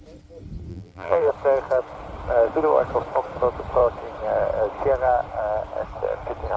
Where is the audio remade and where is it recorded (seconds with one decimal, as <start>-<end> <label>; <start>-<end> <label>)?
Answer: 0.0-0.7 recorded; 0.7-1.3 remade; 1.3-6.6 recorded